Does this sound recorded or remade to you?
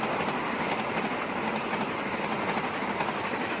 recorded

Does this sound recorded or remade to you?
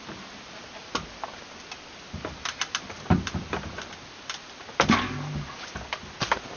recorded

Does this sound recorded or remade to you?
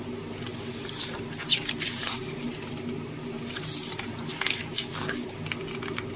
recorded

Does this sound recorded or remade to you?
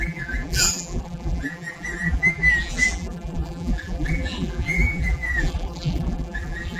remade